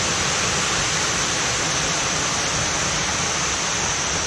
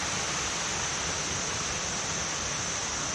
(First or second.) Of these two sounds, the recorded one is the first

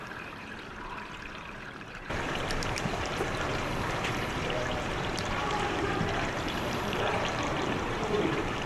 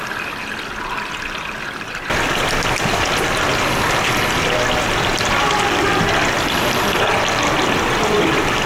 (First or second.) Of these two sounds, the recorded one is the second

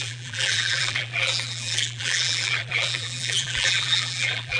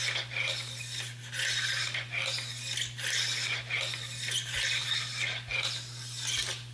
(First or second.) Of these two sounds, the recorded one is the second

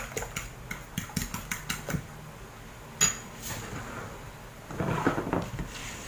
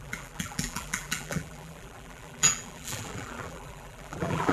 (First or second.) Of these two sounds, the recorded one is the first